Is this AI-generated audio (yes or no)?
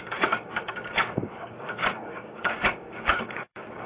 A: yes